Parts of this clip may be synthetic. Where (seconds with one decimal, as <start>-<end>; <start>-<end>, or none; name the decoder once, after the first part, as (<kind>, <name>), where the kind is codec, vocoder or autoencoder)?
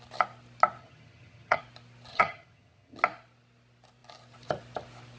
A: 0.8-1.6 (vocoder, HiFi-GAN); 2.1-3.0